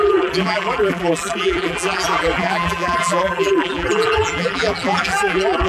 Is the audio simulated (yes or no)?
yes